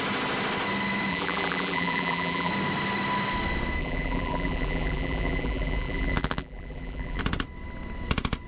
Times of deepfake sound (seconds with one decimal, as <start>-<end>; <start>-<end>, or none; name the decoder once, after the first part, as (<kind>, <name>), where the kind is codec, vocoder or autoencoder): 1.1-2.5 (vocoder, BigVGAN v2); 3.8-7.2